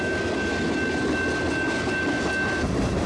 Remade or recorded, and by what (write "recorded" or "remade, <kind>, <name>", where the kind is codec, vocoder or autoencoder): recorded